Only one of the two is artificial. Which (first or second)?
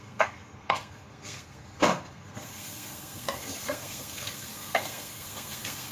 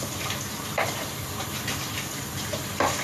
first